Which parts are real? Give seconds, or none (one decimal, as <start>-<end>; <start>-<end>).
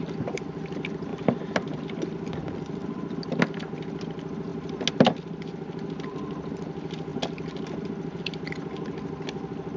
0.0-1.1; 1.8-2.4; 3.4-9.8